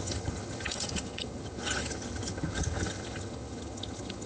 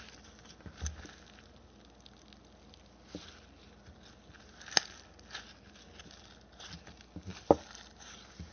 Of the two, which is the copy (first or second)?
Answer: first